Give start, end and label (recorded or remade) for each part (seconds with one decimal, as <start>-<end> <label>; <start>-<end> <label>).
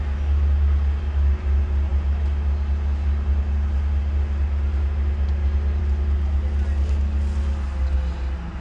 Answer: 0.0-8.6 recorded